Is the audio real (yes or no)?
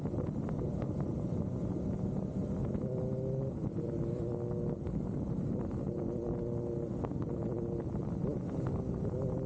yes